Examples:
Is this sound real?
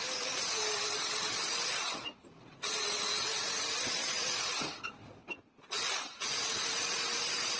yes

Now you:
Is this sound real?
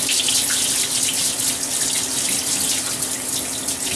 yes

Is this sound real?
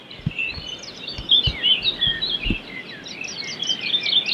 yes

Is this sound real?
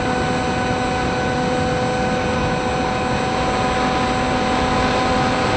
yes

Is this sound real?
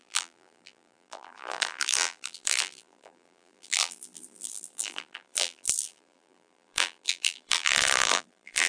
no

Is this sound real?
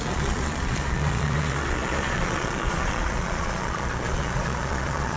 no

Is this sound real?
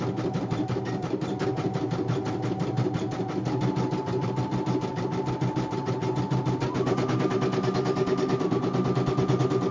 yes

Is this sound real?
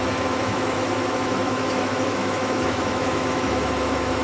no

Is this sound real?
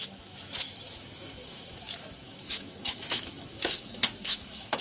no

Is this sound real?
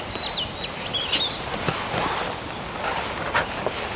yes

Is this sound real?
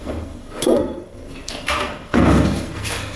no